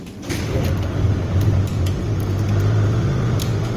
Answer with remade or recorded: recorded